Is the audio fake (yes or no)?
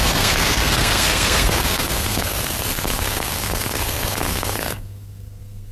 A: yes